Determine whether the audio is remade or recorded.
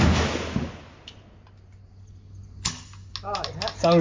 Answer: recorded